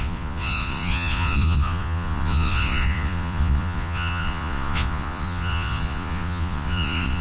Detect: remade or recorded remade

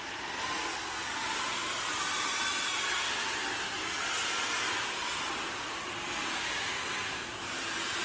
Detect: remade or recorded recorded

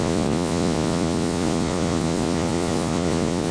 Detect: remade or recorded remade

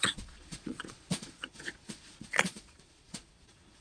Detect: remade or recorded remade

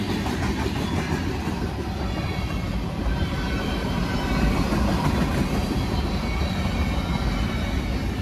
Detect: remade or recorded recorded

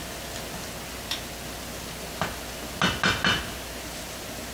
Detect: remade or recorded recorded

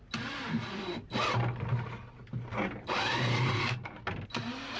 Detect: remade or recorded recorded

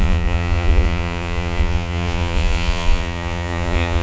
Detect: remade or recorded remade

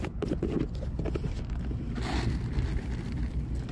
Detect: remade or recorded recorded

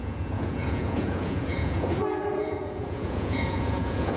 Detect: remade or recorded remade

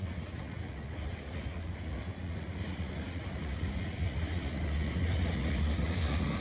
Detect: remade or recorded remade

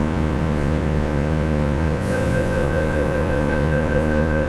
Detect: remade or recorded remade